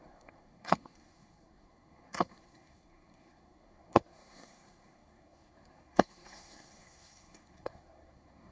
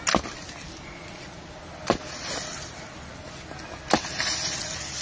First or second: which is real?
second